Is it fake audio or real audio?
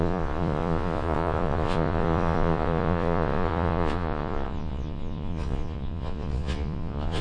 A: fake